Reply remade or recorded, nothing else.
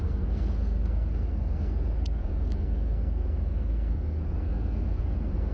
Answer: remade